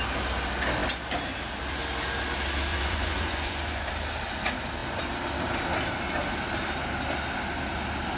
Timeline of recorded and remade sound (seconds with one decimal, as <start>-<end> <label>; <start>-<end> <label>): 0.0-2.7 recorded; 2.7-3.9 remade; 3.9-8.2 recorded